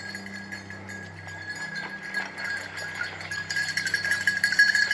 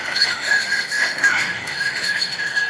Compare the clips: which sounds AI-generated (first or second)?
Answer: second